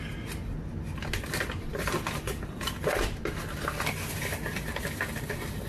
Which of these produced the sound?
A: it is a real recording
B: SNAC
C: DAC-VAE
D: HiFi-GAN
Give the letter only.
A